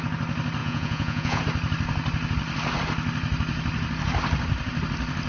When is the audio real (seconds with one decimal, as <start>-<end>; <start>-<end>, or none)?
0.0-0.6; 1.4-5.3

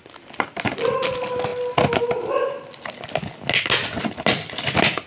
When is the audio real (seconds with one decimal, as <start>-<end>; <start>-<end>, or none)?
0.0-5.1

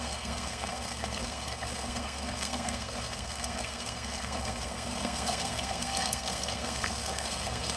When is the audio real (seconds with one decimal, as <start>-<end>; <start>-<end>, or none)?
none

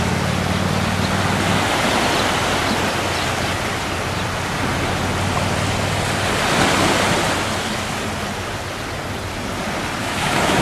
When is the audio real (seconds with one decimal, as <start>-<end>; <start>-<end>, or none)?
0.0-10.0

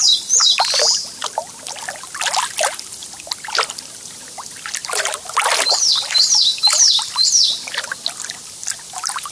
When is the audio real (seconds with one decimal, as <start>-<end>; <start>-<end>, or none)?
0.0-9.3

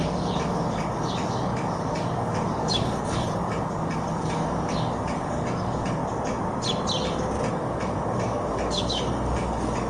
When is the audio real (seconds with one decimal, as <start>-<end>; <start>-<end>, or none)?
6.0-7.5